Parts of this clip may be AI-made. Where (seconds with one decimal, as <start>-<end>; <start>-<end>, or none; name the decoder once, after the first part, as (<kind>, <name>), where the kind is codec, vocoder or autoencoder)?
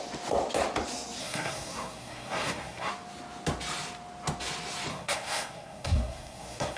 1.2-2.9 (codec, SNAC); 4.9-6.8